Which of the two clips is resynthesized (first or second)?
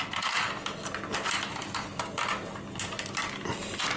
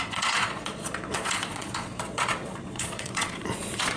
second